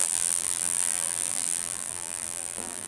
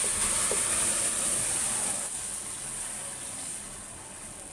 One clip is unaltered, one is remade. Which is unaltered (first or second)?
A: second